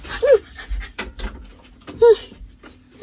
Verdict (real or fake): real